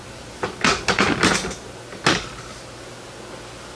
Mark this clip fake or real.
real